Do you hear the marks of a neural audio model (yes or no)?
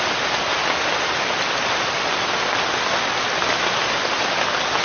no